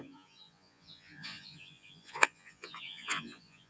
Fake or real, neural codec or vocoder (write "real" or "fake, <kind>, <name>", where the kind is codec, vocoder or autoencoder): fake, vocoder, Vocos